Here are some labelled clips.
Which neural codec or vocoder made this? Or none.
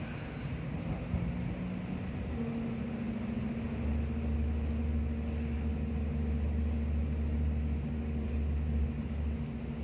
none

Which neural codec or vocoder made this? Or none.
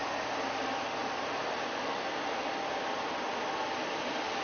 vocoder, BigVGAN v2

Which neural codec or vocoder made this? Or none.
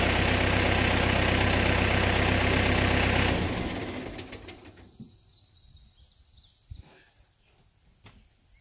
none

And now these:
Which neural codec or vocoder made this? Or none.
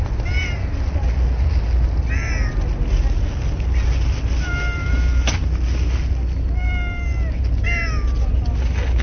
none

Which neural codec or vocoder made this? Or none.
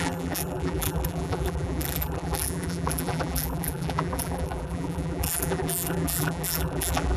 vocoder, BigVGAN v2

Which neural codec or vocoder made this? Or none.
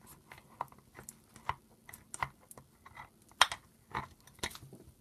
none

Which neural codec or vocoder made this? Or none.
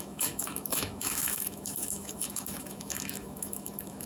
autoencoder, DAC-VAE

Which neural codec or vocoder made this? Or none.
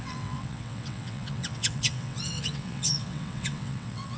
vocoder, WaveNeXt